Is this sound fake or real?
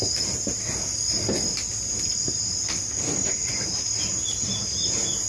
real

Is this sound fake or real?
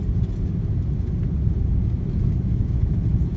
real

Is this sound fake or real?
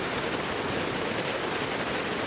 real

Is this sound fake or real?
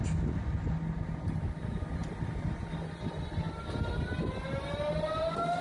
real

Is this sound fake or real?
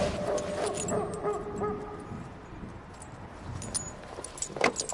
real